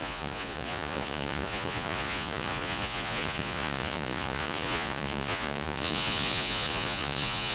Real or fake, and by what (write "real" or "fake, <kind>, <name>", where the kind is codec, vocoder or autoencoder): fake, vocoder, Vocos